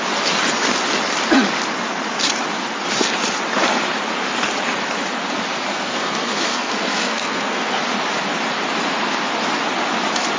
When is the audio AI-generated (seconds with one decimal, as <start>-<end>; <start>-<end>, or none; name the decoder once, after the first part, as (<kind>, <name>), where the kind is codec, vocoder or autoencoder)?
5.7-7.8 (codec, SNAC)